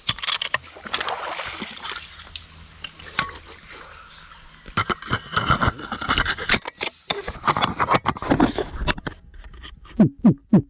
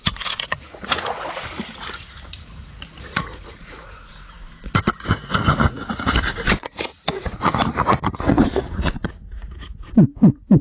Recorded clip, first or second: first